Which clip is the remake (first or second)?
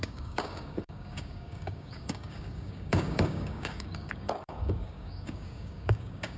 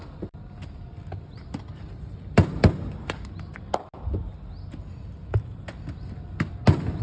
first